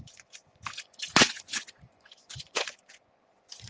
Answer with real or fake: fake